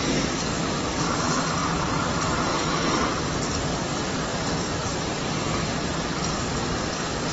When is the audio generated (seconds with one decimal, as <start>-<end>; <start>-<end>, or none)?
0.5-1.0; 2.5-3.2; 4.3-6.3